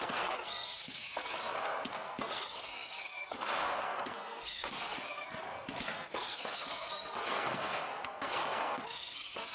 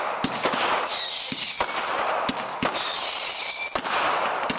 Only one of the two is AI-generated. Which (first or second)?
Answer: first